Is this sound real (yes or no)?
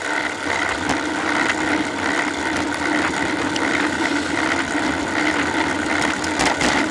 yes